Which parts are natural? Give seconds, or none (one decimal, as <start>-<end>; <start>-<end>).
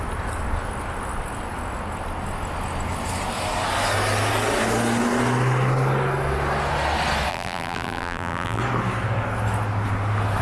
0.0-7.3; 8.6-10.4